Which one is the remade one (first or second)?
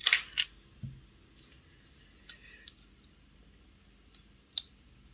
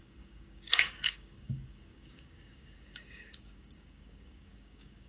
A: second